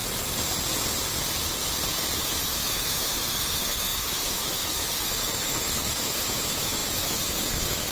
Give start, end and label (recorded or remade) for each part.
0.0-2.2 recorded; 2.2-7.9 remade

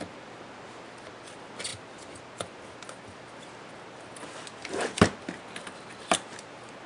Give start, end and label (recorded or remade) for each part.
0.0-6.9 recorded